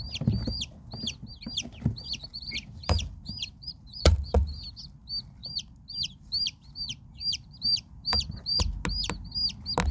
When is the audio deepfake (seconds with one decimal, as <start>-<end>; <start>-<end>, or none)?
2.3-4.2; 5.4-8.6